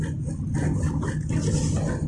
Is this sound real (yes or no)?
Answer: yes